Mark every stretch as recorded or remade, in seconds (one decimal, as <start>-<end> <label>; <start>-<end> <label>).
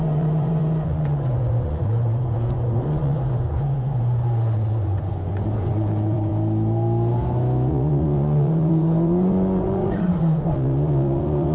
0.0-6.3 remade; 6.3-7.7 recorded; 7.7-11.5 remade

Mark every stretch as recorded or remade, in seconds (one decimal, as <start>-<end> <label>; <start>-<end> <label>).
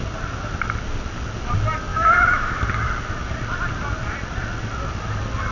0.0-1.9 recorded; 1.9-2.6 remade; 2.6-5.5 recorded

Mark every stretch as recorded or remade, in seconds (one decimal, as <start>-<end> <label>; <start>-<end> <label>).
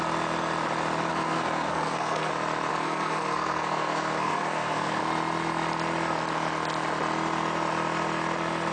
0.0-1.1 recorded; 1.1-2.3 remade; 2.3-2.7 recorded; 2.7-5.0 remade; 5.0-8.7 recorded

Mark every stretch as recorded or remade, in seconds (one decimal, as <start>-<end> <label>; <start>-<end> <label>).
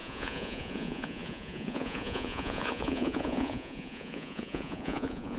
0.0-5.4 remade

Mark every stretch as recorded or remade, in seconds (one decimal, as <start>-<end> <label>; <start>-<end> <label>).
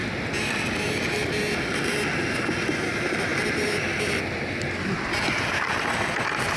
0.0-6.6 recorded